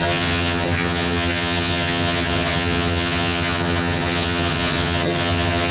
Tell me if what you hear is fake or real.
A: fake